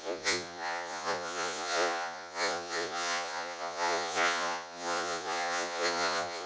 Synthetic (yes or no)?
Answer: yes